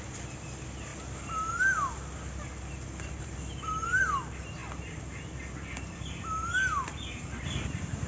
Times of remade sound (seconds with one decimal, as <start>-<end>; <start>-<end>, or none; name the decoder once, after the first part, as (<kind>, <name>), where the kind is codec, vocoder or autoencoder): none